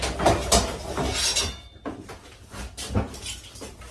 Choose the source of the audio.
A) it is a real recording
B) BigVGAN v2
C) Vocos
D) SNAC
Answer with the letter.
A